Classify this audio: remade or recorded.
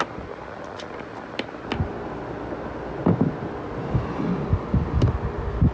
recorded